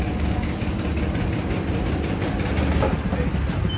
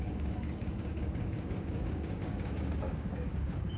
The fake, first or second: second